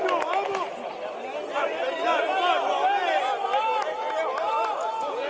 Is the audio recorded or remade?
recorded